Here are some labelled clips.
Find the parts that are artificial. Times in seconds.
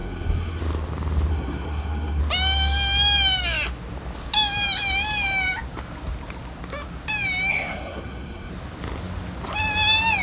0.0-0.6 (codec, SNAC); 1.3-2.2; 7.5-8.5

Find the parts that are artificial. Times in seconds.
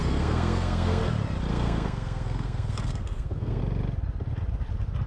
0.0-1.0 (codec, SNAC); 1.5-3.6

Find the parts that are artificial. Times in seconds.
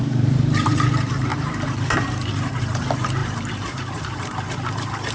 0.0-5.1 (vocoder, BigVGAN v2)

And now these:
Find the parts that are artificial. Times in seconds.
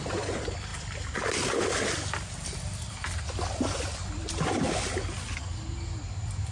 none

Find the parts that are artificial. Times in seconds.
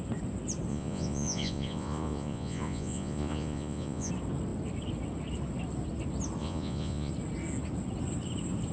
0.7-4.1 (vocoder, Vocos); 6.4-7.1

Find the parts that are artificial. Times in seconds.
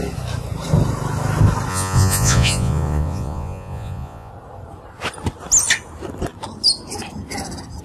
1.7-4.3 (vocoder, Vocos)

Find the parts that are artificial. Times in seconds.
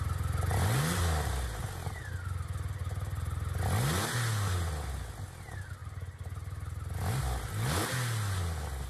none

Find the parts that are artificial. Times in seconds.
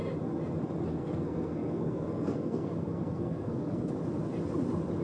0.9-3.9 (codec, SNAC)